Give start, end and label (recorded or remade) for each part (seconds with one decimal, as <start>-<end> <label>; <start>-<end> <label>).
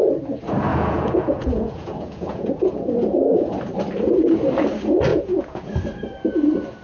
0.0-0.7 recorded; 0.7-3.6 remade; 3.6-5.1 recorded; 5.1-5.7 remade; 5.7-6.8 recorded